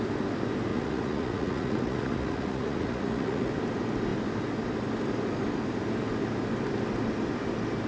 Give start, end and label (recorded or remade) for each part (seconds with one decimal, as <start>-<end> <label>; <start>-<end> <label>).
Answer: 0.0-0.7 recorded; 0.7-3.5 remade; 3.5-7.9 recorded